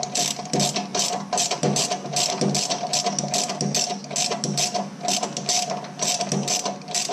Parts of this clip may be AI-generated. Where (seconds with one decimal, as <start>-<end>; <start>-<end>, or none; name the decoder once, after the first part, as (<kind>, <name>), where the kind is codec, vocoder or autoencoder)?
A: none